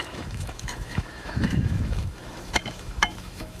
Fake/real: fake